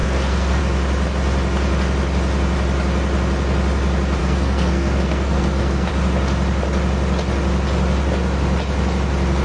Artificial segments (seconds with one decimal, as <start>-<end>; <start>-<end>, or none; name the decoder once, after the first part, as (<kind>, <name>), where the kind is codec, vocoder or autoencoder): 0.0-0.6 (codec, SNAC); 4.2-5.9